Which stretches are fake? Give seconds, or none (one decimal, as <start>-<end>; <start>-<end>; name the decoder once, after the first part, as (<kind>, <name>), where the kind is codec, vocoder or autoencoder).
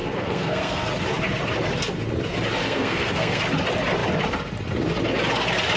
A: 0.0-0.9 (codec, SNAC); 2.6-3.4